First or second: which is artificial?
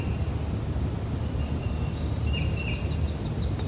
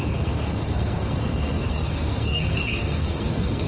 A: second